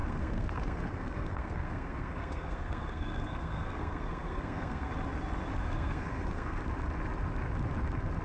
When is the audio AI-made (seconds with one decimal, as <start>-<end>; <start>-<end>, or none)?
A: 0.0-4.9; 5.6-6.6